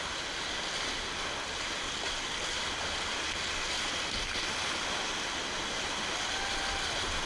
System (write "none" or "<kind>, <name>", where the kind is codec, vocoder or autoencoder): none